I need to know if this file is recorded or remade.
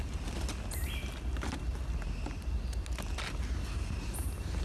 recorded